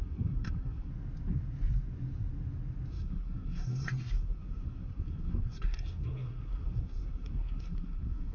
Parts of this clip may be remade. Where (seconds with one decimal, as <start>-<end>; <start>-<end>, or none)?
0.0-0.9; 2.9-8.3